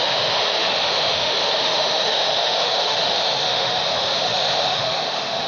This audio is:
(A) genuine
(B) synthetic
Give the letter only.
B